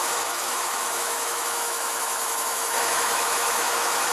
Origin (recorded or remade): remade